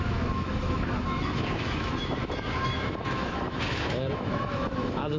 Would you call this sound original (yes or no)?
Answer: no